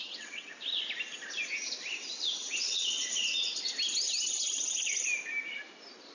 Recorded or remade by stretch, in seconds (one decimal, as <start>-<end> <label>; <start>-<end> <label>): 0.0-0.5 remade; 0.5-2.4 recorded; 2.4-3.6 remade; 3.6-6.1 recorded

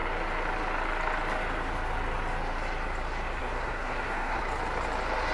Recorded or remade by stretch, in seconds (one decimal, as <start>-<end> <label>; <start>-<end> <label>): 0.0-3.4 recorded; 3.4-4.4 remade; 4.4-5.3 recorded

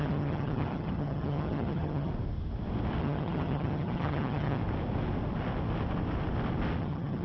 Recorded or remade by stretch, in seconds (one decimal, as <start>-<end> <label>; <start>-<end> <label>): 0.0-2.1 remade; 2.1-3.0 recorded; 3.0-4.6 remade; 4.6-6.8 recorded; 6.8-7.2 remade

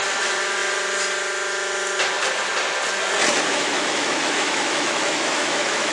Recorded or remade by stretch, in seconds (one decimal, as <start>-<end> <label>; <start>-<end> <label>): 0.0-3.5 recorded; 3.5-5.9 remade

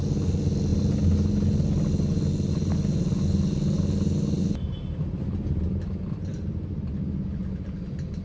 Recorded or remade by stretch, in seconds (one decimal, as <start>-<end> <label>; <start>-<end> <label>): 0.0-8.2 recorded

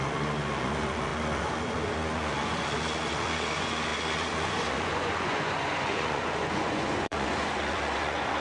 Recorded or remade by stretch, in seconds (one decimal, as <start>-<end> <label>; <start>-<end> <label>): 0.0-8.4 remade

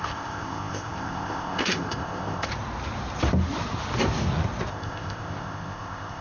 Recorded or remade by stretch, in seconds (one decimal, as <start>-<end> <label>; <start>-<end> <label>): 0.0-2.5 remade; 2.5-4.7 recorded; 4.7-6.2 remade